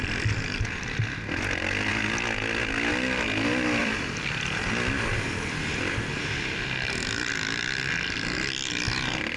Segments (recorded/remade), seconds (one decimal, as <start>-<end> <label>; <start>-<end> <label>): 0.0-3.8 recorded; 3.8-4.7 remade; 4.7-9.4 recorded